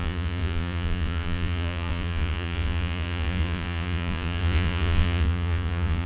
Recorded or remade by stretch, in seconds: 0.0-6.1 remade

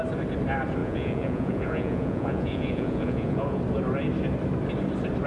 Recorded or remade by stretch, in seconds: 0.0-0.8 recorded; 0.8-3.6 remade; 3.6-5.3 recorded

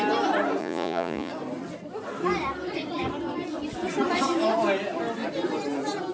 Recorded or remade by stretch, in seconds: 0.0-0.6 recorded; 0.6-1.3 remade; 1.3-6.1 recorded